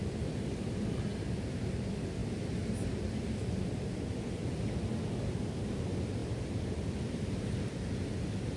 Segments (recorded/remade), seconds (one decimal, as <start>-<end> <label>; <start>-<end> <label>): 0.0-8.6 recorded